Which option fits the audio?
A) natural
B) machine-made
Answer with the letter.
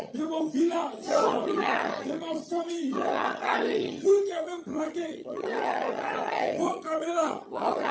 B